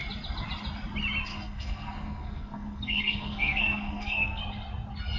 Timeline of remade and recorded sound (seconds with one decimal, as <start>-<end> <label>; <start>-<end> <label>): 0.0-1.3 recorded; 1.3-4.4 remade; 4.4-5.2 recorded